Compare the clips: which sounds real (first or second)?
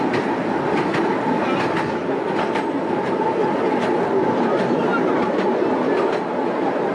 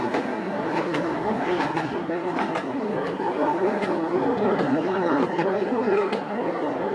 first